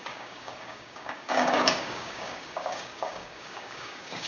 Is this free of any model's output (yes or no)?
no